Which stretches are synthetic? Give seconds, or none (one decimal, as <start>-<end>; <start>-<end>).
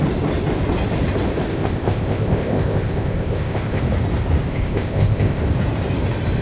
1.5-3.8; 4.5-5.4